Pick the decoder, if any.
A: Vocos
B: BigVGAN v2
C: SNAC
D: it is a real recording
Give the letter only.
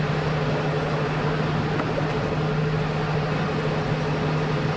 D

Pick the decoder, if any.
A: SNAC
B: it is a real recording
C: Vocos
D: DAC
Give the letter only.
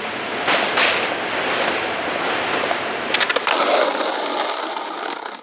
B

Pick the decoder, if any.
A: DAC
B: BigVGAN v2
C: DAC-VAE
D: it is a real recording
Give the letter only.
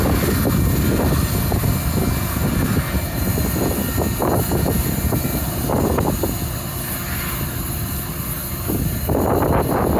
D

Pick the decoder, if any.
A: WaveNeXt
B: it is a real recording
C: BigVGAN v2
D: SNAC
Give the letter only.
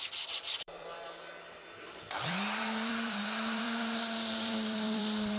C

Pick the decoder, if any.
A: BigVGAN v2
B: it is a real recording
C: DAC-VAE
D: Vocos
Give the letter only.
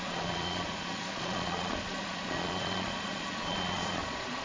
D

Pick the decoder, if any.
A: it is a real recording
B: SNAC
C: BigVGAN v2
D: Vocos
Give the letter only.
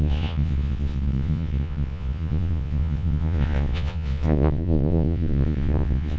D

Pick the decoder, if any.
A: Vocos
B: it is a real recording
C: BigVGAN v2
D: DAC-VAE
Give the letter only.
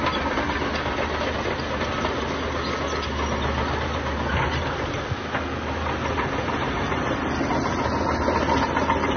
B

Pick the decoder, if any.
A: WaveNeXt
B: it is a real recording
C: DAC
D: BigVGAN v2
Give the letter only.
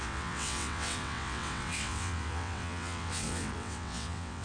A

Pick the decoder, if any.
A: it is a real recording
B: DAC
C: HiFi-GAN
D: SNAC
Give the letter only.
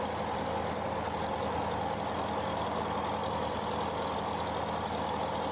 A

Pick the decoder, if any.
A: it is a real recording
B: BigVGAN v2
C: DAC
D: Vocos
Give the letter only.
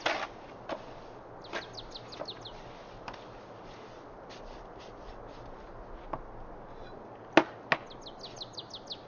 A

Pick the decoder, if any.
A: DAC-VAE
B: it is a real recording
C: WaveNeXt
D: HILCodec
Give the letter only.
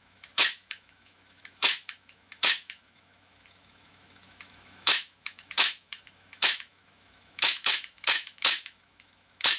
A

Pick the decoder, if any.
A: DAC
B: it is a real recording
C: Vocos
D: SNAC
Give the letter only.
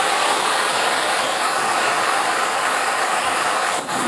A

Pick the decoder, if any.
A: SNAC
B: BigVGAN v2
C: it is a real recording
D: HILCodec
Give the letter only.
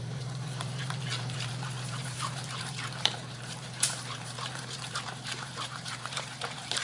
B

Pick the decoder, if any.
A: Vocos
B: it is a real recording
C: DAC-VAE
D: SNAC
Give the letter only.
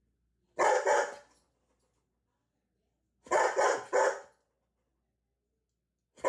B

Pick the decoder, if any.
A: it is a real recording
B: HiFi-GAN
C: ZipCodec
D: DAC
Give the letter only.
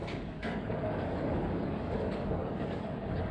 D